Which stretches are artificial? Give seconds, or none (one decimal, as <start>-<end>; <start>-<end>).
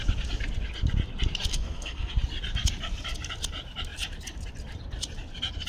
1.5-2.1